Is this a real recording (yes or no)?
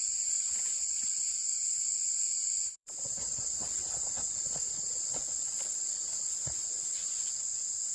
no